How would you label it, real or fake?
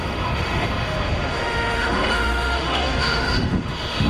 fake